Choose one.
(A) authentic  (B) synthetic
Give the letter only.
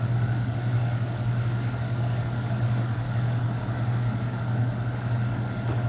B